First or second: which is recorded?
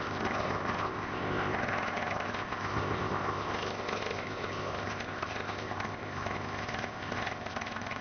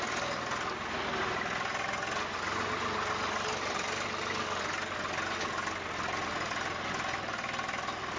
second